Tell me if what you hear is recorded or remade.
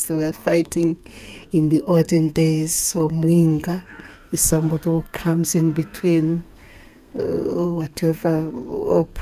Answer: remade